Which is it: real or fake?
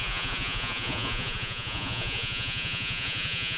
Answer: fake